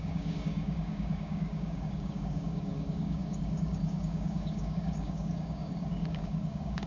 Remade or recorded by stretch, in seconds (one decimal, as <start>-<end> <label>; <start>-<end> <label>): 0.0-6.9 remade